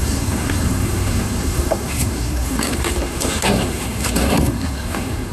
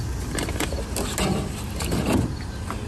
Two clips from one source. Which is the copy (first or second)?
first